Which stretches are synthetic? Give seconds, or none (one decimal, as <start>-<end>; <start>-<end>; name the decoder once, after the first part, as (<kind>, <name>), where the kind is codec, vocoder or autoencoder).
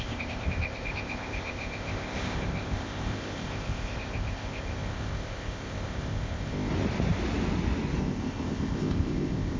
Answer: 0.0-6.7 (codec, ZipCodec); 8.0-9.6